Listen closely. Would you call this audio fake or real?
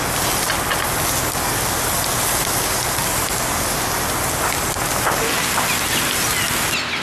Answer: real